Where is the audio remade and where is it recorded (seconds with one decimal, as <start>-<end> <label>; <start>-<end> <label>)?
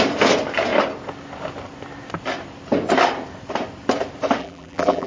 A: 0.0-4.4 recorded; 4.4-5.1 remade